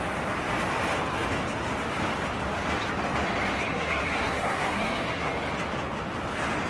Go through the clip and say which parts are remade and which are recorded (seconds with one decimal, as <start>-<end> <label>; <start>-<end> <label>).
0.0-3.7 recorded; 3.7-5.3 remade; 5.3-6.7 recorded